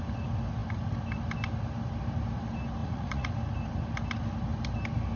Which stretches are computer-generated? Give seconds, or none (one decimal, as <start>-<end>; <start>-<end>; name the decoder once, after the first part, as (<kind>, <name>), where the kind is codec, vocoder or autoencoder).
2.8-3.3 (vocoder, Vocos)